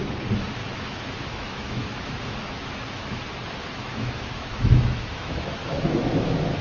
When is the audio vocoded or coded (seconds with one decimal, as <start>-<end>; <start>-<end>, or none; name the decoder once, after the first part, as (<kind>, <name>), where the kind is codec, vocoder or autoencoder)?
0.6-3.2 (autoencoder, DAC-VAE); 3.8-6.6